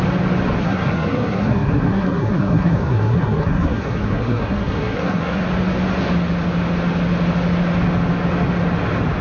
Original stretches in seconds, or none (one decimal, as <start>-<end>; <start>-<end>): 0.0-0.6; 5.4-9.2